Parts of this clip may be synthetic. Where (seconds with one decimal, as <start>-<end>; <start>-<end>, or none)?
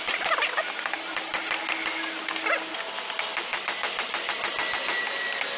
none